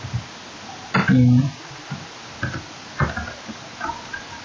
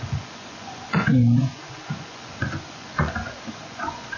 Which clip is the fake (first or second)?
second